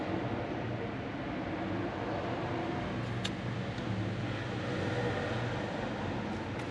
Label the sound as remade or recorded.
recorded